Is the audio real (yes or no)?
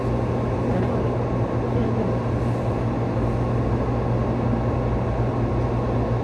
yes